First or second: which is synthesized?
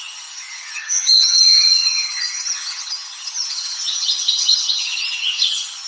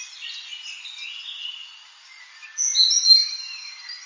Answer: first